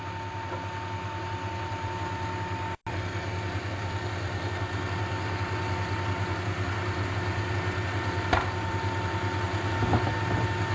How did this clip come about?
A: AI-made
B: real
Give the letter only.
B